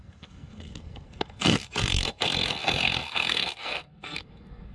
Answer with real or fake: fake